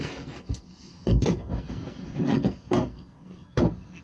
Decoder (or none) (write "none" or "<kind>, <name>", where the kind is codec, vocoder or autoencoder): codec, SNAC